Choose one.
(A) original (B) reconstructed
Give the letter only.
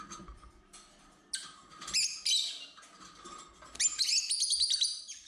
A